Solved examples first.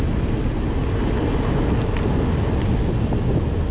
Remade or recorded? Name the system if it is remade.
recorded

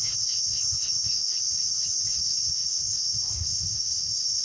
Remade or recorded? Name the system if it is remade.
remade, codec, ZipCodec